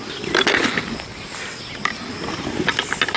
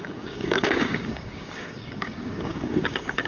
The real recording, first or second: first